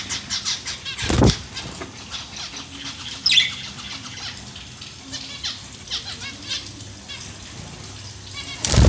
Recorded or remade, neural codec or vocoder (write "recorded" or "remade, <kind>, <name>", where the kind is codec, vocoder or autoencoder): recorded